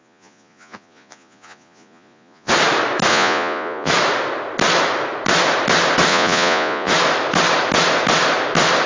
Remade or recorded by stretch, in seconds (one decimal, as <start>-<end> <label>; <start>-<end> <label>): 0.0-2.5 remade; 2.5-3.1 recorded; 3.1-3.9 remade; 3.9-6.1 recorded; 6.1-6.9 remade; 6.9-8.9 recorded